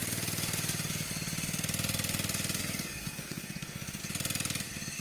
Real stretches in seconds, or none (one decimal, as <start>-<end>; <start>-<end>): 0.0-2.6; 4.0-5.0